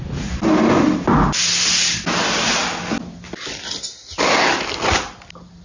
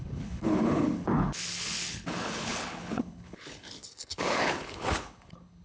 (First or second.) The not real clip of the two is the second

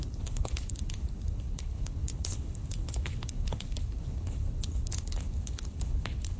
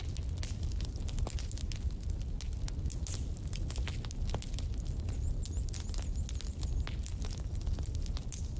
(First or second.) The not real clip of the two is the first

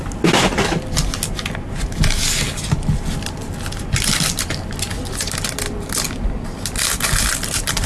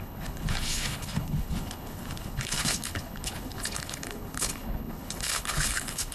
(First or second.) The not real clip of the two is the second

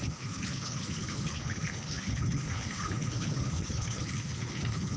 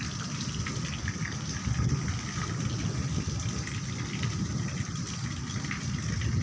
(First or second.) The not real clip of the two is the first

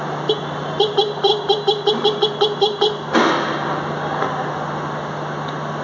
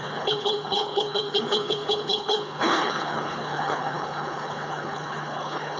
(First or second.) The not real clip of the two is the second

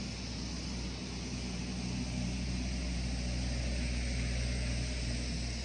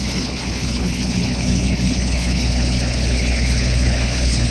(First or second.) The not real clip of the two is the second